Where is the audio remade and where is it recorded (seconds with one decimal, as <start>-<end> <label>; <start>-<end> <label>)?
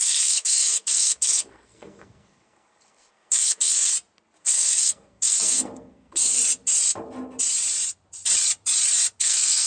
0.0-3.9 remade; 3.9-4.4 recorded; 4.4-6.4 remade; 6.4-9.2 recorded; 9.2-9.7 remade